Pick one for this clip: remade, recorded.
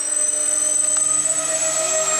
recorded